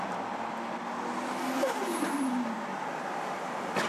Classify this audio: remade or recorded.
recorded